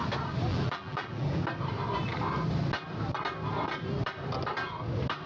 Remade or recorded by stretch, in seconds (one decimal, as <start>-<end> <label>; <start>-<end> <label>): 0.0-0.5 recorded; 0.5-1.4 remade; 1.4-5.3 recorded